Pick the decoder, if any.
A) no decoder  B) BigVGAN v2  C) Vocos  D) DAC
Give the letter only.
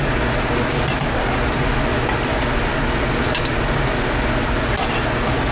A